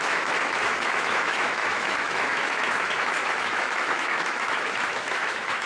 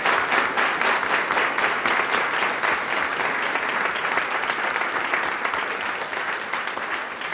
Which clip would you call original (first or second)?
second